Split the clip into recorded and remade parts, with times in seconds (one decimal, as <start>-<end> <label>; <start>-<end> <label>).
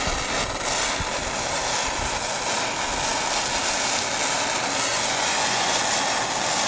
0.0-4.9 recorded; 4.9-5.8 remade; 5.8-6.7 recorded